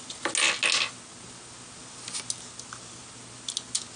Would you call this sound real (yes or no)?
yes